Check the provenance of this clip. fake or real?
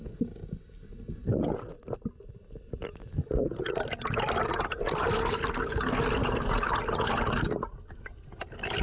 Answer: real